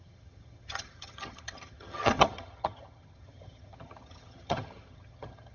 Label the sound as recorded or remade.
remade